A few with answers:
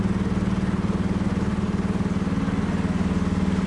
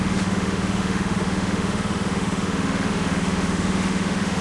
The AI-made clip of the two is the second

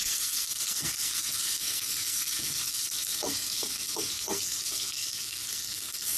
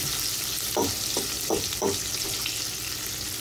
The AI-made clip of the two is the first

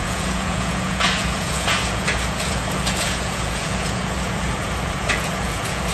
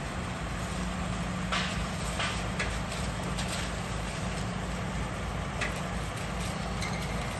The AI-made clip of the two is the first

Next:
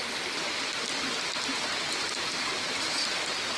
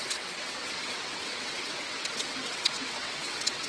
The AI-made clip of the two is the second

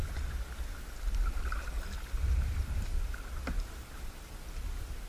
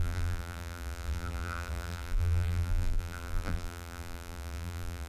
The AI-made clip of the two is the second